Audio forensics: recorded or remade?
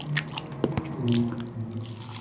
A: recorded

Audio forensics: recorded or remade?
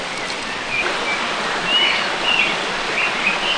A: recorded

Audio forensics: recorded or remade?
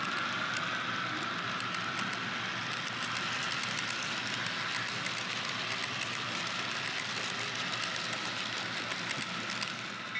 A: recorded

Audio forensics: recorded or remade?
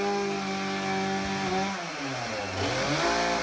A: recorded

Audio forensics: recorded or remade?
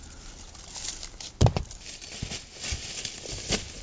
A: recorded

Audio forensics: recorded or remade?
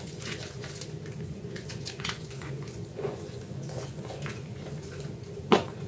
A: remade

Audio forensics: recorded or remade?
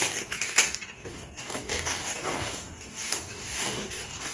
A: remade